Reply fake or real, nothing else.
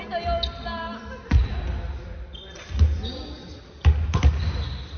real